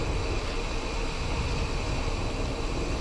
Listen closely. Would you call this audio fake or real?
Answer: real